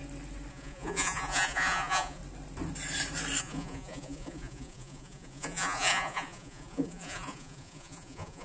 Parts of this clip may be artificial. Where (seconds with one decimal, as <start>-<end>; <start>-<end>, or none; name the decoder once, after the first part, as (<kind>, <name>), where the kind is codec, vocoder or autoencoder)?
0.5-2.2 (vocoder, Vocos); 3.4-8.4